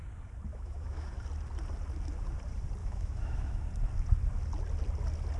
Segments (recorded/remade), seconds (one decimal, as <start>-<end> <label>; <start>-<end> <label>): 0.0-0.5 recorded; 0.5-1.1 remade; 1.1-2.8 recorded; 2.8-3.6 remade; 3.6-5.4 recorded